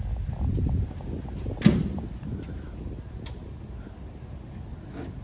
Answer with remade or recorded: recorded